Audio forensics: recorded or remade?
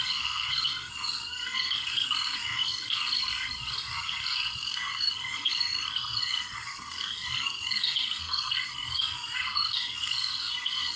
remade